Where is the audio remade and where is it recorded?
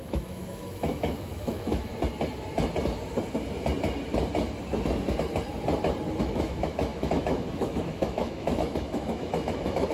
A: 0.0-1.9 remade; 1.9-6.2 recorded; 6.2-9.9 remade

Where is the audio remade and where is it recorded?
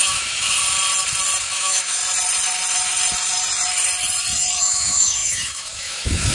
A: 0.0-0.6 remade; 0.6-1.4 recorded; 1.4-2.0 remade; 2.0-4.6 recorded; 4.6-6.3 remade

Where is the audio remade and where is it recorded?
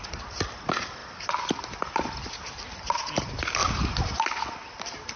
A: 0.0-5.2 recorded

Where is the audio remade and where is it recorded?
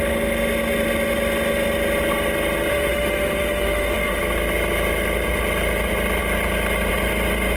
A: 0.0-2.7 recorded; 2.7-4.2 remade; 4.2-7.6 recorded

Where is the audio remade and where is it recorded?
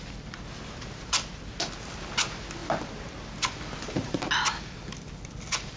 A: 0.0-5.8 recorded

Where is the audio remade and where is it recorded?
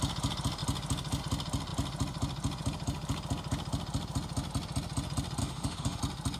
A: 0.0-5.4 recorded; 5.4-6.0 remade; 6.0-6.4 recorded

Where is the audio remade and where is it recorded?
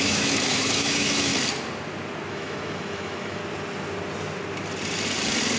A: 0.0-1.3 remade; 1.3-2.3 recorded; 2.3-3.4 remade; 3.4-5.6 recorded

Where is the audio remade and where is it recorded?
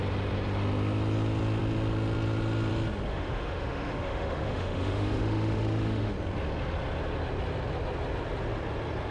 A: 0.0-3.1 recorded; 3.1-6.1 remade; 6.1-9.1 recorded